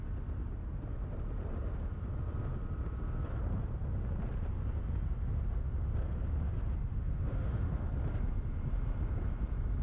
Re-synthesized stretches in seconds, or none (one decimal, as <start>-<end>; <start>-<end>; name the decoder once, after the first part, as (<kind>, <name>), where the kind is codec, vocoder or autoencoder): 6.9-7.9 (autoencoder, DAC-VAE)